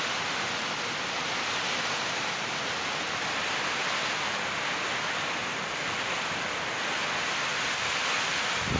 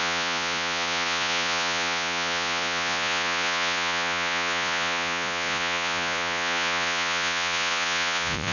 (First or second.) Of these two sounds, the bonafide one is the first